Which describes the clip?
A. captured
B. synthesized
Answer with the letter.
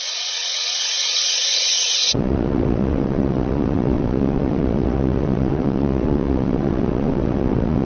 B